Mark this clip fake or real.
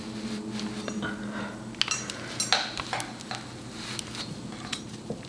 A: real